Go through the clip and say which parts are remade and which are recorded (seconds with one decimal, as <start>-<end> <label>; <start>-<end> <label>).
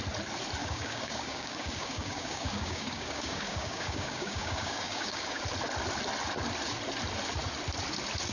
0.0-0.6 recorded; 0.6-5.4 remade; 5.4-8.3 recorded